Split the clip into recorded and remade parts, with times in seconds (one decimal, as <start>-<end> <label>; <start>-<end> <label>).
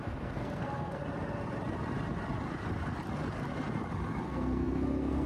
0.0-1.0 remade; 1.0-4.2 recorded; 4.2-5.3 remade